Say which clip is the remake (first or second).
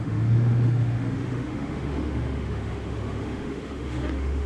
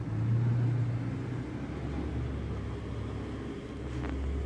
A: first